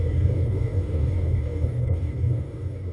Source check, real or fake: fake